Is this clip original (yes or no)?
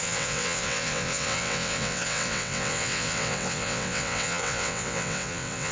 no